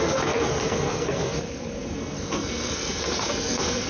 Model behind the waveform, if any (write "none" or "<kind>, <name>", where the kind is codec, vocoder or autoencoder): codec, SNAC